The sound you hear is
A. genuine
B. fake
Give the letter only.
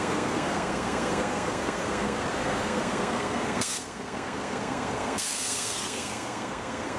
B